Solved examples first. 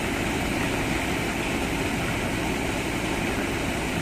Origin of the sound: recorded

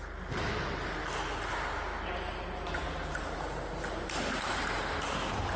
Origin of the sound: recorded